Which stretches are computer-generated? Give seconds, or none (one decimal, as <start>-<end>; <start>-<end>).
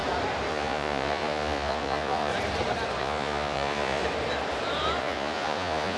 0.5-2.3; 3.0-4.0; 5.0-6.0